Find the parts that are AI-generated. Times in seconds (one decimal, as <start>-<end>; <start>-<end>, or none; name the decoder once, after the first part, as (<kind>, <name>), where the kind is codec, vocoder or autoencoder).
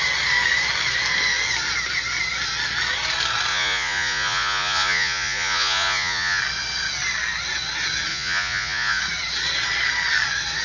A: 3.5-6.4 (vocoder, Vocos); 8.1-9.0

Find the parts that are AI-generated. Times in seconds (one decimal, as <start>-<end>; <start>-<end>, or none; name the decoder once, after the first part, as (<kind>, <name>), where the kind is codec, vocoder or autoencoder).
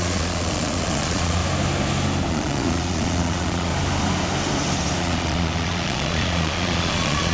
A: 0.0-1.4 (vocoder, Vocos); 2.3-3.7; 5.0-7.3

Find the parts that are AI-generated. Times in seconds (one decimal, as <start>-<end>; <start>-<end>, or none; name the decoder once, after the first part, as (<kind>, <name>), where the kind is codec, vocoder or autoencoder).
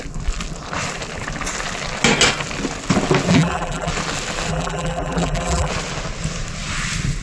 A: 3.3-3.9 (vocoder, BigVGAN v2); 4.5-5.7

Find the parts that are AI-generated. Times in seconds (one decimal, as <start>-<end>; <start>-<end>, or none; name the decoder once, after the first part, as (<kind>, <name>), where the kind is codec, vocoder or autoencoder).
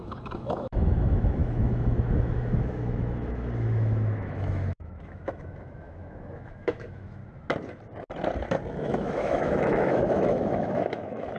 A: 0.0-7.2 (autoencoder, DAC-VAE); 8.7-11.4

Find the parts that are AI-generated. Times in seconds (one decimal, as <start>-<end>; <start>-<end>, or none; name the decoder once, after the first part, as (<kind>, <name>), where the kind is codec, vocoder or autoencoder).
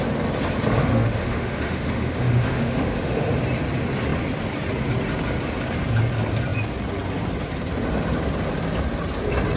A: 0.8-3.3 (autoencoder, DAC-VAE)